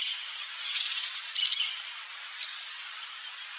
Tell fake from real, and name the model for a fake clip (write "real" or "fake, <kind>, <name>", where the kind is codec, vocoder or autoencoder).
real